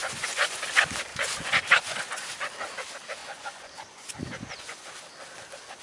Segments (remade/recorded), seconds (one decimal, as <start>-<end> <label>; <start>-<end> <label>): 0.0-0.6 remade; 0.6-1.1 recorded; 1.1-2.3 remade; 2.3-3.2 recorded; 3.2-4.9 remade; 4.9-5.8 recorded